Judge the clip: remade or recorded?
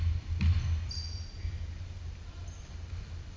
recorded